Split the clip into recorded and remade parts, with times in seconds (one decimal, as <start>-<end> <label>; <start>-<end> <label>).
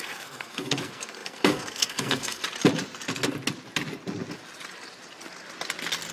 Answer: 0.0-2.4 remade; 2.4-6.1 recorded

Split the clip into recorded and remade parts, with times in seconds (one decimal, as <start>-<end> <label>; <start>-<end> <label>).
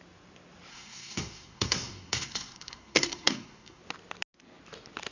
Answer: 0.0-0.7 recorded; 0.7-3.8 remade; 3.8-5.1 recorded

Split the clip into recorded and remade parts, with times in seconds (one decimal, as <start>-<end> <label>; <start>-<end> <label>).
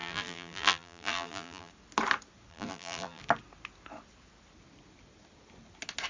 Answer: 0.0-1.7 remade; 1.7-2.5 recorded; 2.5-3.2 remade; 3.2-6.1 recorded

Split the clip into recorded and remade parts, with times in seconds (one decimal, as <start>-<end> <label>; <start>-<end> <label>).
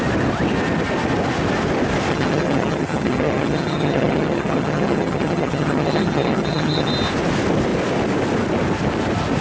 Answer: 0.0-2.1 recorded; 2.1-6.9 remade; 6.9-9.4 recorded